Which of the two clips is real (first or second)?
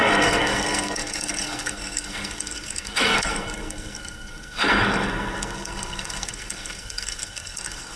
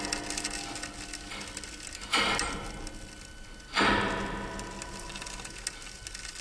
second